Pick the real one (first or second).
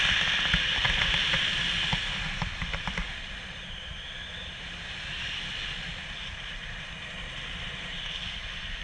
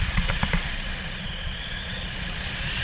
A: first